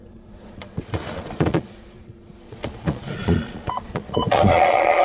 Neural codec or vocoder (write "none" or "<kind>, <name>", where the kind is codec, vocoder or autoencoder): vocoder, Vocos